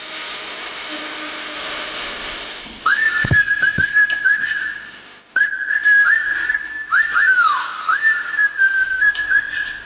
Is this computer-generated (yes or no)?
no